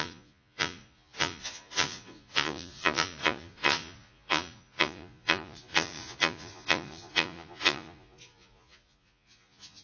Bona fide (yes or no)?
no